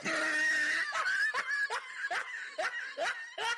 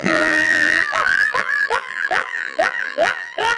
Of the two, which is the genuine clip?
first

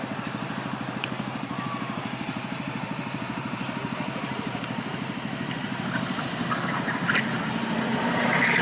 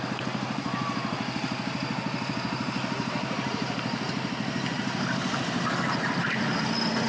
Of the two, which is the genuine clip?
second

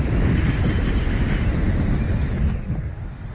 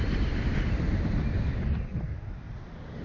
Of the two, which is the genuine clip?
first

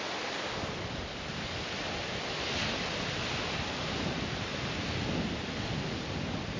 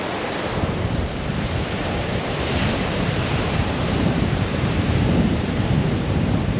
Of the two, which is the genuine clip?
first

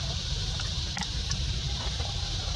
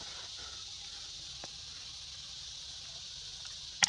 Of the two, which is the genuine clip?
second